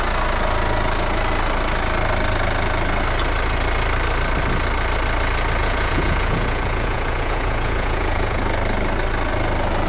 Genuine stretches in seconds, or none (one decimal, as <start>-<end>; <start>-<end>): 0.0-5.6; 8.4-9.9